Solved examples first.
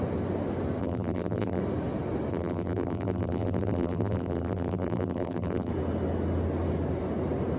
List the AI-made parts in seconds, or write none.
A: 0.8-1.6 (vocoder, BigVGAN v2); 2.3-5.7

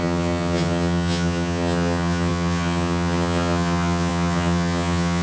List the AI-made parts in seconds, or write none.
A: 0.0-5.2 (vocoder, HiFi-GAN)

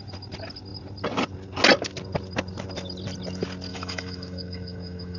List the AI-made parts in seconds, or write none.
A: 3.7-5.2 (autoencoder, DAC-VAE)

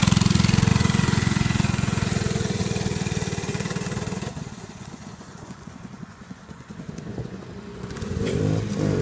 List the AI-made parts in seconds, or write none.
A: 0.7-2.6 (vocoder, Vocos); 3.5-8.4

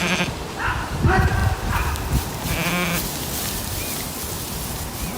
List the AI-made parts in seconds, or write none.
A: 0.0-1.4 (vocoder, BigVGAN v2); 4.5-5.2

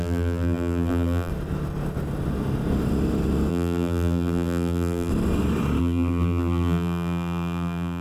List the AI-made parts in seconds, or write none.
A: 0.0-1.3 (vocoder, BigVGAN v2); 3.5-5.1; 5.8-8.0

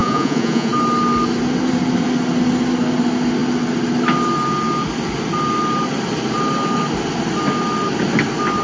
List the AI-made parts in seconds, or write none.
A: 0.0-0.7 (vocoder, Vocos)